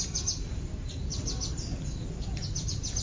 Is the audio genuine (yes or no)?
yes